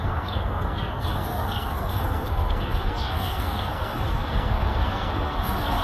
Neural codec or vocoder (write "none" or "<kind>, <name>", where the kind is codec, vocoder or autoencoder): codec, SNAC